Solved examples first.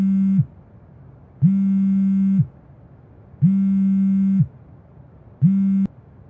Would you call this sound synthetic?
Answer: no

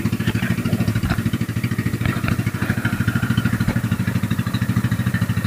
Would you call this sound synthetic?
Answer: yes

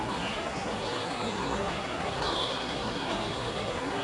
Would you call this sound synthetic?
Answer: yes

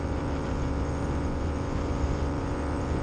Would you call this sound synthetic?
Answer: yes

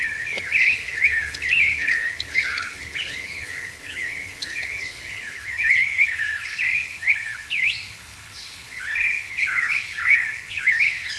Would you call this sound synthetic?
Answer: yes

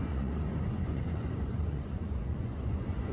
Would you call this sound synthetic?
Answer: yes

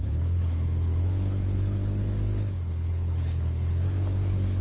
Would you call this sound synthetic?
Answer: yes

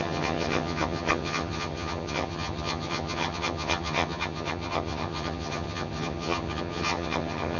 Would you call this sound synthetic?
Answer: yes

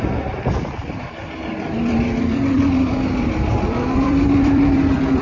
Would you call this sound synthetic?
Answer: yes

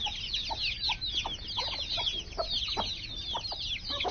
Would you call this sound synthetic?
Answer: no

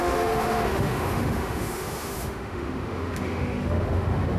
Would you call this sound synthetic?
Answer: yes